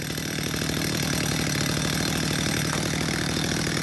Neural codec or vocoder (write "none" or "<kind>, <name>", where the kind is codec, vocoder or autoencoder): none